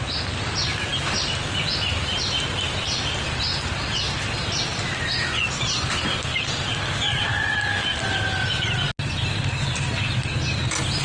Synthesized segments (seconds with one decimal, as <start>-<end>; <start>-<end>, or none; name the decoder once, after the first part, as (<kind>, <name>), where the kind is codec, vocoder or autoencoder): none